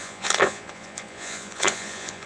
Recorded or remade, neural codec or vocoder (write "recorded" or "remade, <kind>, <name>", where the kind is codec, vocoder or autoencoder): remade, vocoder, Vocos